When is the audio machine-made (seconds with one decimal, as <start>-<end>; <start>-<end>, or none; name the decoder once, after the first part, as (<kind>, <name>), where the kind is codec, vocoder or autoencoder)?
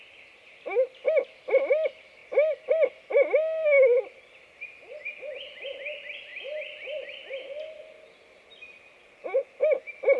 none